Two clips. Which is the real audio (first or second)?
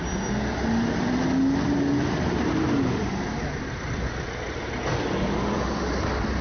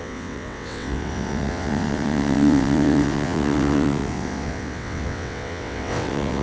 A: first